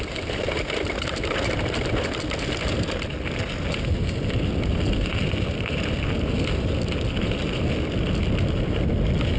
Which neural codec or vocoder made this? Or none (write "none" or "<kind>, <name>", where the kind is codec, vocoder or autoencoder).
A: none